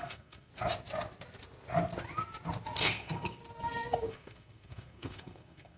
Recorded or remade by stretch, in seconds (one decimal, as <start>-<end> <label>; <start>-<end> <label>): 0.0-0.5 remade; 0.5-2.8 recorded; 2.8-3.4 remade; 3.4-4.1 recorded; 4.1-5.8 remade